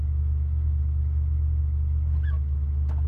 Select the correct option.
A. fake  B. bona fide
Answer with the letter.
B